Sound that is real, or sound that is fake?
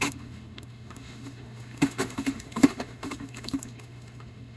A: fake